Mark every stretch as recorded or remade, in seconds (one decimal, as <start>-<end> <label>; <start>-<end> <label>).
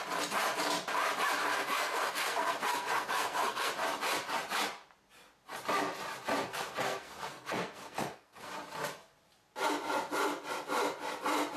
0.0-1.4 recorded; 1.4-3.7 remade; 3.7-6.4 recorded; 6.4-8.5 remade; 8.5-11.6 recorded